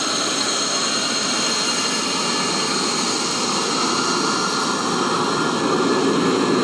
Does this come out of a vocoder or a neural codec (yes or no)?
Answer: no